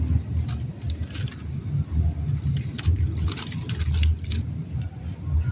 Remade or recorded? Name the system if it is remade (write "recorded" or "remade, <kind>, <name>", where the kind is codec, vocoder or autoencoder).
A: recorded